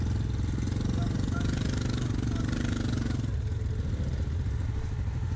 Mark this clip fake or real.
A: real